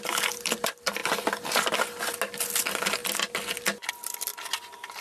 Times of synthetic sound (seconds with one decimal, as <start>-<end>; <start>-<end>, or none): 0.0-1.0; 2.6-3.0; 3.9-4.3